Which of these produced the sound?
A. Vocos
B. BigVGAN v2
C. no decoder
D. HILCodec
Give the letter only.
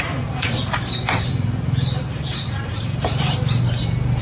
B